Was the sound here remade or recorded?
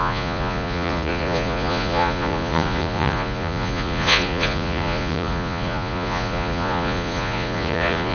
remade